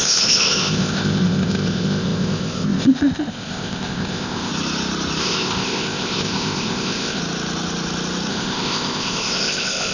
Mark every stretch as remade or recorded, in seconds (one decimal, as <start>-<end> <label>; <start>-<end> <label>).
0.0-4.5 remade; 4.5-5.2 recorded; 5.2-7.2 remade; 7.2-8.3 recorded; 8.3-9.9 remade